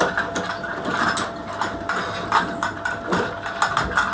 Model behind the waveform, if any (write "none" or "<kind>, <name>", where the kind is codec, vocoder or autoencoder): none